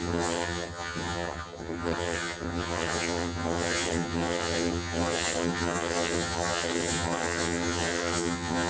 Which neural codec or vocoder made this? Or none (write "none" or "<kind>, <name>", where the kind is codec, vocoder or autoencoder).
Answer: vocoder, HiFi-GAN